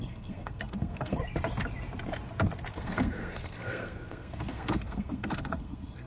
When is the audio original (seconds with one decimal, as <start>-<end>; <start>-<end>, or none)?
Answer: 1.2-2.7